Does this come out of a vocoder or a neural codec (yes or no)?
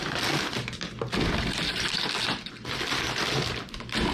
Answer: no